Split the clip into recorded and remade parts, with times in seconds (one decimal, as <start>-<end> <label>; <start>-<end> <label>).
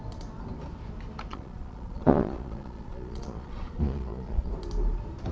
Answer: 0.0-1.3 recorded; 1.3-4.5 remade; 4.5-5.3 recorded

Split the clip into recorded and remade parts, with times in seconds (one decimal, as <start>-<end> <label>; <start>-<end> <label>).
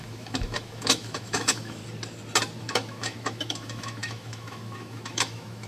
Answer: 0.0-1.8 remade; 1.8-2.6 recorded; 2.6-5.7 remade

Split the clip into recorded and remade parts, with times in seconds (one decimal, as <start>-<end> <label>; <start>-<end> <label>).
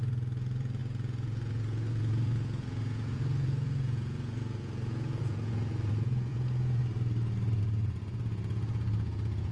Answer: 0.0-6.8 remade; 6.8-7.6 recorded; 7.6-9.5 remade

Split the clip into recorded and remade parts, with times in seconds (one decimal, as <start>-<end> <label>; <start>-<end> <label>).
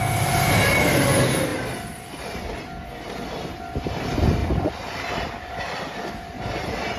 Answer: 0.0-1.5 recorded; 1.5-2.4 remade; 2.4-4.4 recorded; 4.4-6.1 remade; 6.1-7.0 recorded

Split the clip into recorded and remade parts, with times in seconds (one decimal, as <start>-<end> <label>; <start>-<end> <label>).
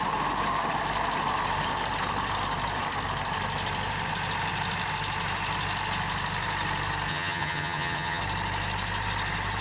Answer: 0.0-7.1 recorded; 7.1-8.2 remade; 8.2-9.6 recorded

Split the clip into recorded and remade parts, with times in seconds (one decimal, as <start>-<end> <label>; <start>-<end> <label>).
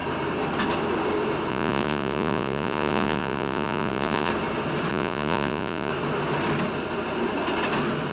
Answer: 0.0-1.5 recorded; 1.5-4.3 remade; 4.3-4.9 recorded; 4.9-5.9 remade; 5.9-8.1 recorded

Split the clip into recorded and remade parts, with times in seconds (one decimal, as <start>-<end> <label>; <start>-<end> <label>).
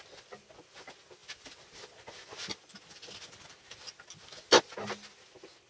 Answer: 0.0-5.7 recorded